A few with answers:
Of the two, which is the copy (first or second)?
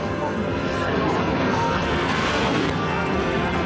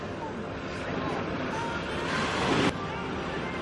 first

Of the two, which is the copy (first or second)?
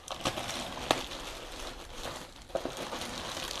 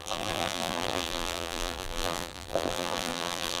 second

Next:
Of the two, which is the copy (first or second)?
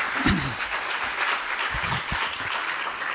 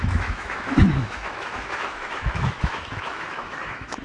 second